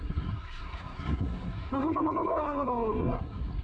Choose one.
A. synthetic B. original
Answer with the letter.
A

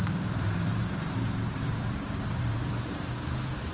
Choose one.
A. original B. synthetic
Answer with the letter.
B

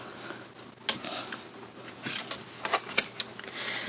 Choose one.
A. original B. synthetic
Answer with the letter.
A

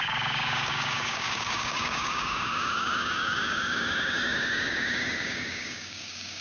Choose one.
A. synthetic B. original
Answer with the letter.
A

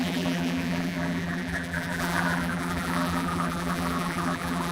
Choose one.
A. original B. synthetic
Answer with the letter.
B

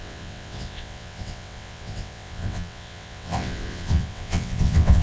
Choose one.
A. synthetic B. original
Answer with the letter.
A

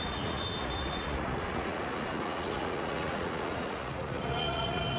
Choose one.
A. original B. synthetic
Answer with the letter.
B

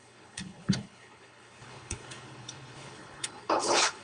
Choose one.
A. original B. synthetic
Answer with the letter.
B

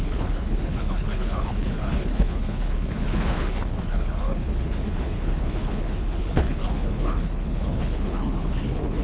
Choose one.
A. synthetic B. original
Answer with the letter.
A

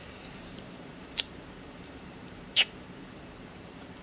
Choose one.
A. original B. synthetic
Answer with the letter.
B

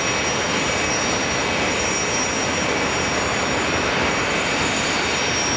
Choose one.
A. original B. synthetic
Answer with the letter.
A